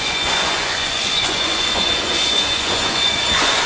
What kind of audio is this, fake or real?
fake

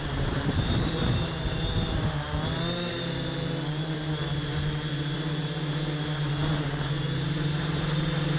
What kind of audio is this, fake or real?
fake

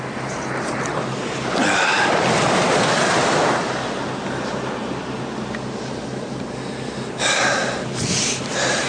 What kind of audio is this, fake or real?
real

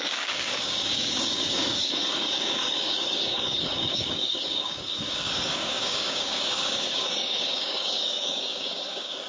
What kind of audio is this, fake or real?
fake